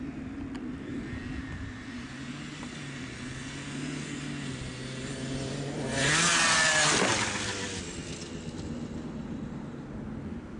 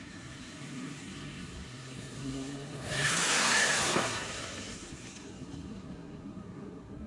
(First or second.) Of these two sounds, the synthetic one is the second